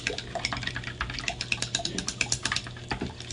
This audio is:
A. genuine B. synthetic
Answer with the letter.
A